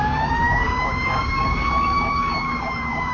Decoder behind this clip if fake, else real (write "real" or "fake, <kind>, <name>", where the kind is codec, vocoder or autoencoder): fake, codec, DAC